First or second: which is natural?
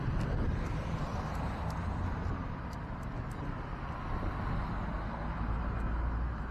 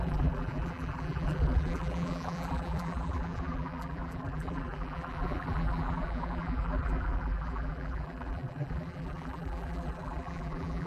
first